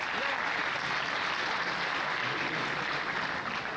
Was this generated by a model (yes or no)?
no